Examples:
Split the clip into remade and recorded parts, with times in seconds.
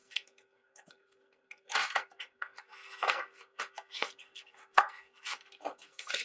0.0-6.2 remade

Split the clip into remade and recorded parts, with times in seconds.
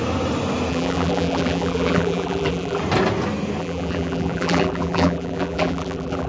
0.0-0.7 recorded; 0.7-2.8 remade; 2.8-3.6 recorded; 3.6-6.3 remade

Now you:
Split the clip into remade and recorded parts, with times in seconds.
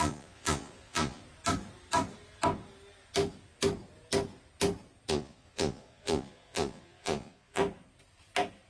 0.0-1.2 remade; 1.2-5.1 recorded; 5.1-7.6 remade; 7.6-8.7 recorded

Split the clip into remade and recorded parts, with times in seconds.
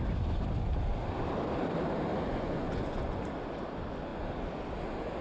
0.0-2.1 recorded; 2.1-3.2 remade; 3.2-5.2 recorded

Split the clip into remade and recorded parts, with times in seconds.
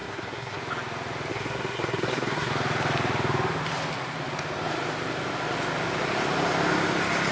0.0-0.6 remade; 0.6-1.3 recorded; 1.3-2.5 remade; 2.5-7.3 recorded